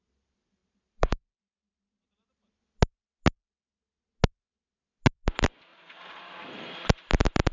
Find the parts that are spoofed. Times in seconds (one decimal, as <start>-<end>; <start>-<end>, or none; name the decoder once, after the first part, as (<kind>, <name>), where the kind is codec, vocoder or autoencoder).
0.6-2.6 (vocoder, BigVGAN v2); 5.7-6.6